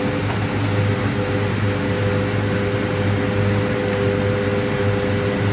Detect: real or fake real